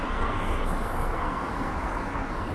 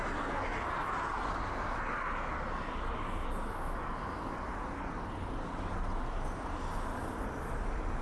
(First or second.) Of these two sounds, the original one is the second